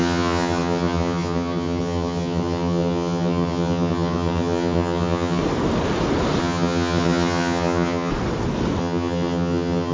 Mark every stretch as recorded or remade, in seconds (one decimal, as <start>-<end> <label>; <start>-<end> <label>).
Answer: 0.0-5.4 remade; 5.4-6.4 recorded; 6.4-8.1 remade; 8.1-8.8 recorded; 8.8-9.9 remade